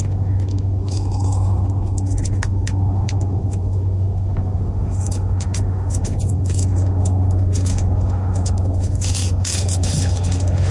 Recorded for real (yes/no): no